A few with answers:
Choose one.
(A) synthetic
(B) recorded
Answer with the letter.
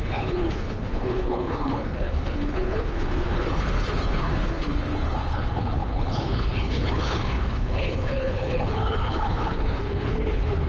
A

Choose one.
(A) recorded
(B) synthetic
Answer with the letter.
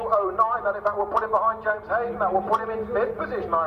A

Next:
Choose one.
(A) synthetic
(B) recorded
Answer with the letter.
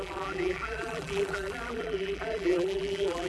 A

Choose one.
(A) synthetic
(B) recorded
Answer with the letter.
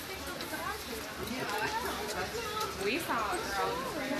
B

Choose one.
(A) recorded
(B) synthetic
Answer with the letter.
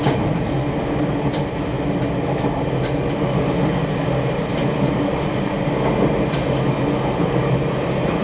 A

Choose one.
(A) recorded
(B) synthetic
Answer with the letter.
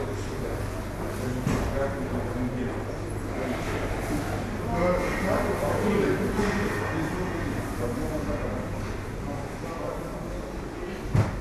A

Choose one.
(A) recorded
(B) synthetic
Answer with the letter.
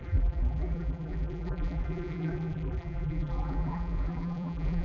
B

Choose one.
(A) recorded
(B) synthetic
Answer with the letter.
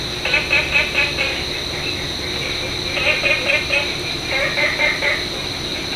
A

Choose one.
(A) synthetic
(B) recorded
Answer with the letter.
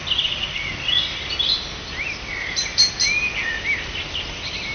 B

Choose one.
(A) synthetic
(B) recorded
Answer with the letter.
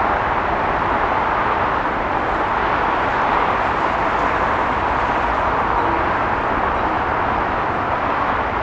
B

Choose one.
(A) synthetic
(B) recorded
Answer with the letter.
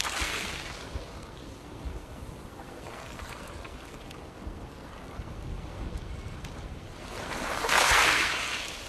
A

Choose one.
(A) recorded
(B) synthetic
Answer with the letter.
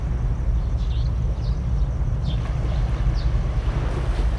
A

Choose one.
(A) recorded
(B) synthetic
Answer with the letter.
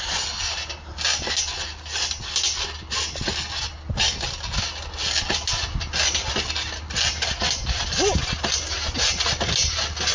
A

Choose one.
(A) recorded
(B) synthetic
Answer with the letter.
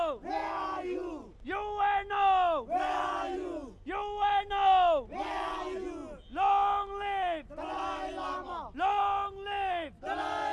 A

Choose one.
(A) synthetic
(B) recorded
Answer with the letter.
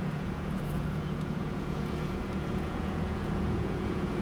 A